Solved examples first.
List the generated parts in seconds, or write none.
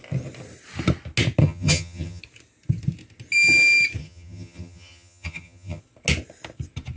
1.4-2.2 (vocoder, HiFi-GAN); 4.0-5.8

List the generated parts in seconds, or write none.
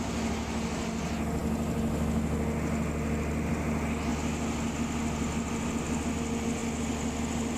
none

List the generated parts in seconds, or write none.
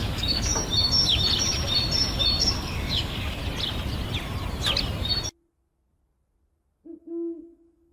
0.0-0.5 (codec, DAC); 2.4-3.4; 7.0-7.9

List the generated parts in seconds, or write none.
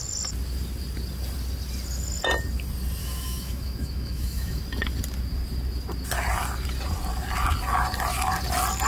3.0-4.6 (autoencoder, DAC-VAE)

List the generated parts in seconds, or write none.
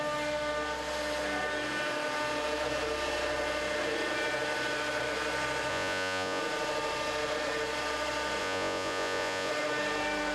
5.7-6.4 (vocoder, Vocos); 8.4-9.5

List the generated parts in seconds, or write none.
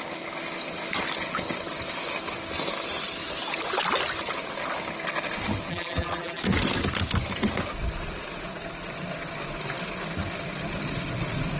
5.7-6.4 (vocoder, BigVGAN v2)